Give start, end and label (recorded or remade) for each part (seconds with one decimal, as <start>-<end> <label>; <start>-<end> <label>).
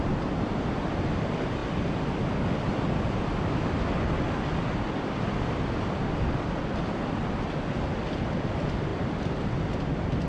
0.0-10.3 recorded